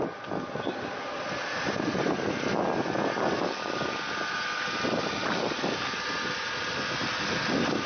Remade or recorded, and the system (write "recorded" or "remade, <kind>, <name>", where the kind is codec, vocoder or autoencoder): recorded